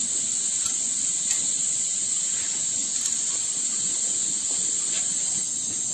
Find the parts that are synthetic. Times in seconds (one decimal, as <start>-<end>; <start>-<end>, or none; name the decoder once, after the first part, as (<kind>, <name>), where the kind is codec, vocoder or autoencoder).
none